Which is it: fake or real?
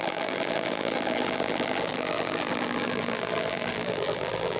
fake